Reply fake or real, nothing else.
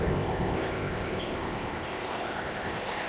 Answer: fake